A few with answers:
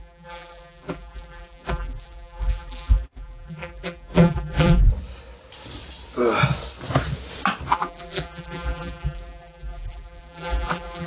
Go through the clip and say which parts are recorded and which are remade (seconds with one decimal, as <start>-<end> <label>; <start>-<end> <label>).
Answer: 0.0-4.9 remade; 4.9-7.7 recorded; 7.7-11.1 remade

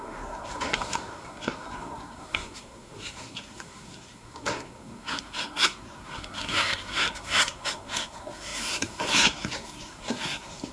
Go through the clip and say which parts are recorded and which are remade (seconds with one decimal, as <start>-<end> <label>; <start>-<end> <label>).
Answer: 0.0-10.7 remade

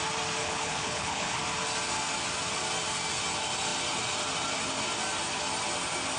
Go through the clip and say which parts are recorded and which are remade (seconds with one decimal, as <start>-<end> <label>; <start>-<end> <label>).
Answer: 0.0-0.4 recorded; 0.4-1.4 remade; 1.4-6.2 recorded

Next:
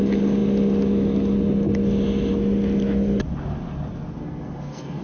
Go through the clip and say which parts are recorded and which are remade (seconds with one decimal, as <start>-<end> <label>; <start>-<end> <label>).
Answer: 0.0-4.2 recorded; 4.2-5.0 remade